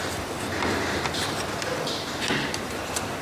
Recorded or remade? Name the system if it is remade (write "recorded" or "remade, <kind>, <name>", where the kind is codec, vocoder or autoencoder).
recorded